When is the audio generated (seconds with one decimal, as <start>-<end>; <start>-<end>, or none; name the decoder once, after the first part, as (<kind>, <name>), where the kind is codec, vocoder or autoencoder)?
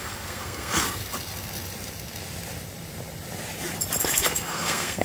0.0-1.0 (codec, SNAC); 4.0-5.0